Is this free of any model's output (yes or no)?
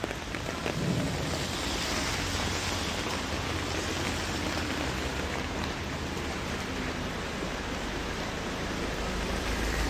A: yes